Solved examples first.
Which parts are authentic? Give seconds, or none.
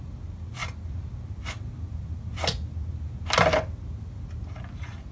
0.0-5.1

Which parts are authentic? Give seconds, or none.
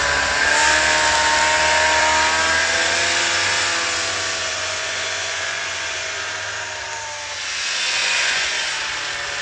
0.0-4.4; 6.2-8.0; 8.7-9.4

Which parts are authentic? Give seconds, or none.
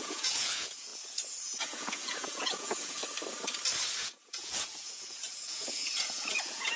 3.0-4.0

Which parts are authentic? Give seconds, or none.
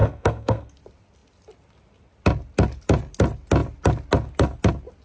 0.7-5.0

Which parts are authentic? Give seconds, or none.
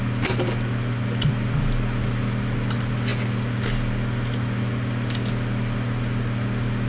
0.0-6.9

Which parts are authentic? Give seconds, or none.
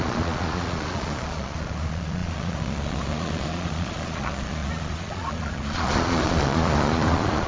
none